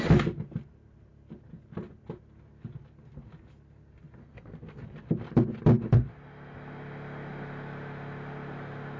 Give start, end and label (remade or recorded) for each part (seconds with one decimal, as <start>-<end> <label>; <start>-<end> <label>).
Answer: 0.0-4.2 recorded; 4.2-4.8 remade; 4.8-9.0 recorded